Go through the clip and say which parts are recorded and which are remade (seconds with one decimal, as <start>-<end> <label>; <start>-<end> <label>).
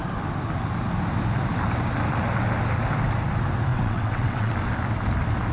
0.0-3.7 recorded; 3.7-4.5 remade; 4.5-5.5 recorded